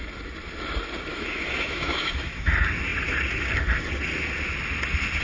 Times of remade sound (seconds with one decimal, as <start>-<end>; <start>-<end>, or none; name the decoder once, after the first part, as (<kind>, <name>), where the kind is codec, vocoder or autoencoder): 1.1-2.5 (autoencoder, DAC-VAE)